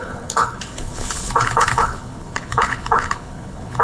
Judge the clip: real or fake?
fake